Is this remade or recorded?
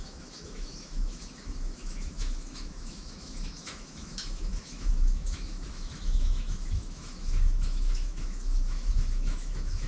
remade